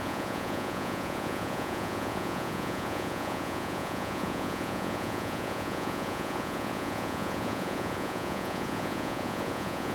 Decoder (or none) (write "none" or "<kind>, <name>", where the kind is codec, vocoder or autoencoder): vocoder, Vocos